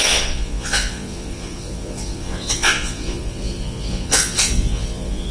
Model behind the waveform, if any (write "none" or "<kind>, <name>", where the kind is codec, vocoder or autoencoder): vocoder, Vocos